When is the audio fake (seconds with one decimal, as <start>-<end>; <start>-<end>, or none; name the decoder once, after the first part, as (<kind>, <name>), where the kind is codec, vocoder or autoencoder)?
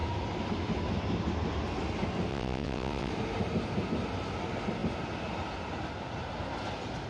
2.3-3.1 (vocoder, WaveNeXt)